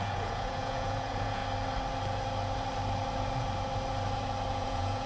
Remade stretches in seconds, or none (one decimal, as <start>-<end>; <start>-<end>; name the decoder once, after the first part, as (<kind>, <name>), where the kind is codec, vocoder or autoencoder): 0.0-1.4 (vocoder, Vocos); 4.5-5.1